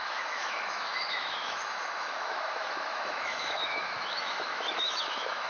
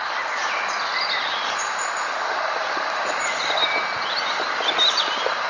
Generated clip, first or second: first